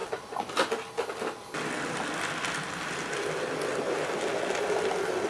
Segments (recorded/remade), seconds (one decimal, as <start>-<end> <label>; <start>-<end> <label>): 0.0-5.3 recorded